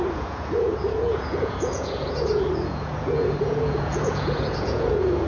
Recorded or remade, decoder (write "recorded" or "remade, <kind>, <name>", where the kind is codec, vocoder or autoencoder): remade, vocoder, Vocos